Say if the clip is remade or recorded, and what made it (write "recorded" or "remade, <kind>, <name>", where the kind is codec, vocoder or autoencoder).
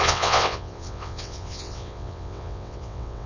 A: remade, vocoder, WaveNeXt